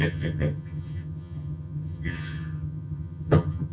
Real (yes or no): no